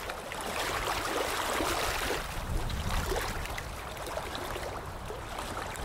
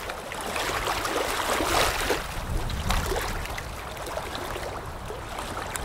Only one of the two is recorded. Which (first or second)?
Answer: second